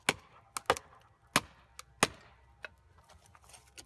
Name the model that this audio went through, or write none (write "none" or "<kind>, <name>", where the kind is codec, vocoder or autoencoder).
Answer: none